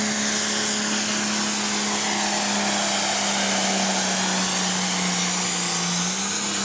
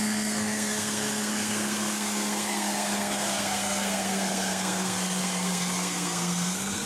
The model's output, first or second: second